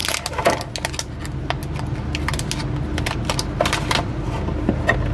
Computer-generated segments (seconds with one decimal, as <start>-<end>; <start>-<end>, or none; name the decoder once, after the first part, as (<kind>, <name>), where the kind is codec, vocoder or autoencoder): 1.2-1.6 (vocoder, BigVGAN v2); 2.8-5.1